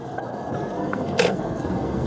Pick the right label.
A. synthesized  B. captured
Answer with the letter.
A